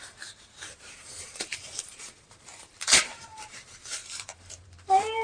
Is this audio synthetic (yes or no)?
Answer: yes